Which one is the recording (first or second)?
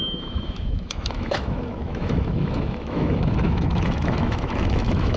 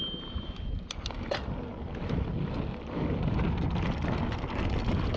second